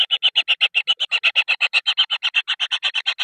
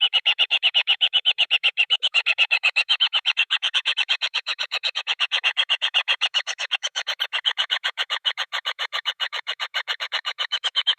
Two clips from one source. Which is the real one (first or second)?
first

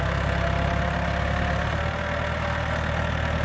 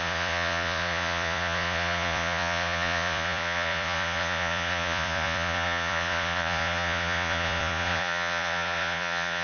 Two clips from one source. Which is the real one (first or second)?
first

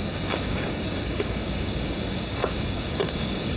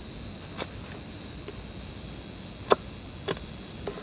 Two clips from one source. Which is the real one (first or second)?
second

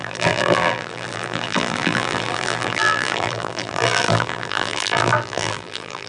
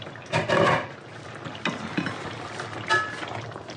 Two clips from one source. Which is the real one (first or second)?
second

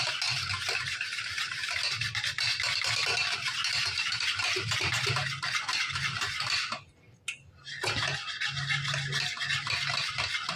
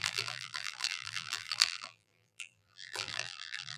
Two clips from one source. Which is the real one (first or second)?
first